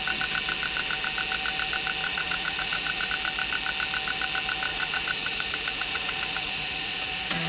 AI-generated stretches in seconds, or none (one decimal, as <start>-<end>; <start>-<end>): 2.0-3.1; 4.7-7.5